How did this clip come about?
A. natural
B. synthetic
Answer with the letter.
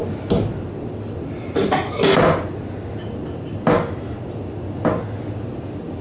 A